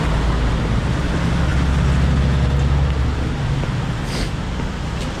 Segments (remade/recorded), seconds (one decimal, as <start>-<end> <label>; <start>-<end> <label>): 0.0-5.2 recorded

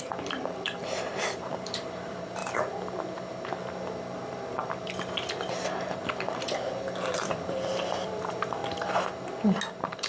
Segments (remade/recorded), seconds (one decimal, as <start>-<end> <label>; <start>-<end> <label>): 0.0-2.4 remade; 2.4-6.4 recorded; 6.4-8.6 remade; 8.6-9.7 recorded; 9.7-10.1 remade

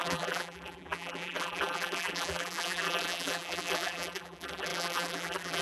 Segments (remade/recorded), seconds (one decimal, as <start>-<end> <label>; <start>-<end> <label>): 0.0-5.6 remade

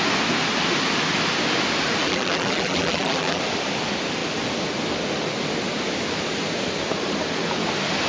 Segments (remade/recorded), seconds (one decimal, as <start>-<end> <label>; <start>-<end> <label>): 0.0-2.0 recorded; 2.0-3.4 remade; 3.4-8.1 recorded

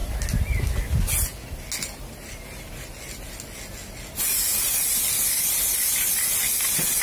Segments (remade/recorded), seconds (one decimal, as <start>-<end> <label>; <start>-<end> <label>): 0.0-4.2 recorded; 4.2-7.0 remade